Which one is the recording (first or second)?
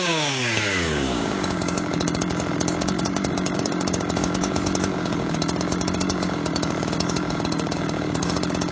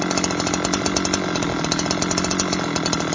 second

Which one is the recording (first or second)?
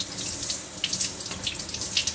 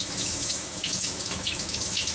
first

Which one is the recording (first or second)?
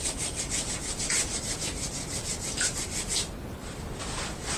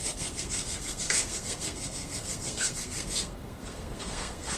first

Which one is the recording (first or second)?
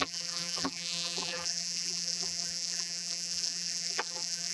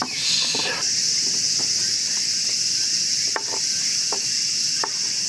second